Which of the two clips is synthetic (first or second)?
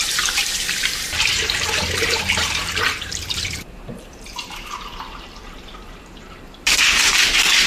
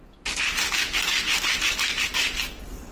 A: first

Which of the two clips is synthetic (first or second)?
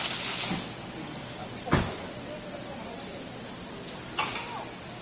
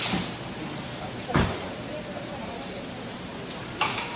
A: second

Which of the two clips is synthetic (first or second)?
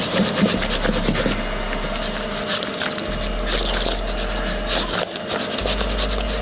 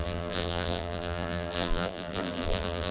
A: second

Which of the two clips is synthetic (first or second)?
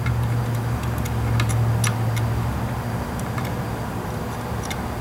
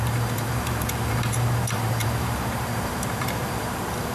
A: second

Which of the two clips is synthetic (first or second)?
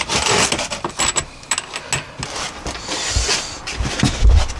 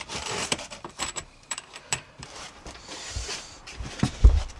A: second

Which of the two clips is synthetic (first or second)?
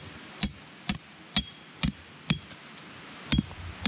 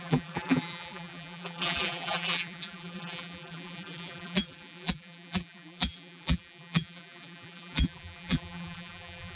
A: second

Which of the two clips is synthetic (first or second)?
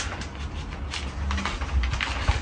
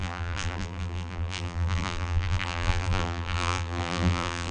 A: second